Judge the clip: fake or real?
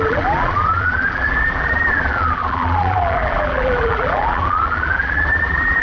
fake